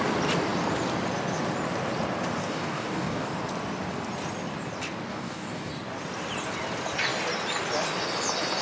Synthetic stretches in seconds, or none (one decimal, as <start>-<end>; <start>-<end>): 2.4-3.3; 5.1-5.7